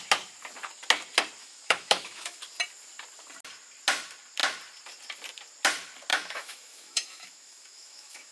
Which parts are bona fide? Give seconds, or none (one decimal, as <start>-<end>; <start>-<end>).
0.0-1.4; 2.4-6.1